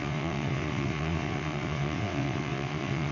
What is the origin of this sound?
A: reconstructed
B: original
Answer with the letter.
A